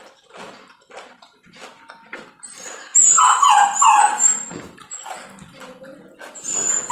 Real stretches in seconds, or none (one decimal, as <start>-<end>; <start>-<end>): 0.0-6.9